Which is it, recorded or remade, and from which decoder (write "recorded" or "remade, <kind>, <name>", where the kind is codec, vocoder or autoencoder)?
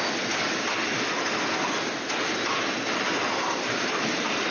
recorded